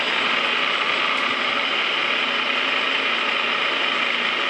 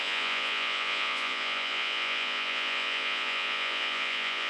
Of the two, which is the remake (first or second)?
second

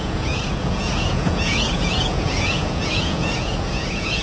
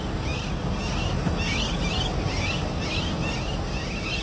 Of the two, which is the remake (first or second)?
first